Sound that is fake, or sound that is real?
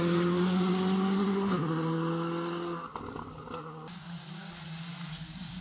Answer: real